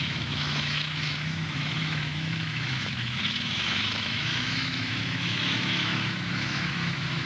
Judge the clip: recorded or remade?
remade